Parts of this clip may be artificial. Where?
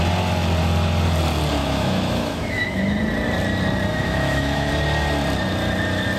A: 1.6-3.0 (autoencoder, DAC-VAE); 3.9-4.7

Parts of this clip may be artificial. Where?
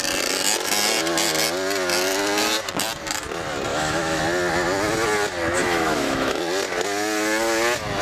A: 3.7-4.2 (autoencoder, DAC-VAE); 5.6-6.4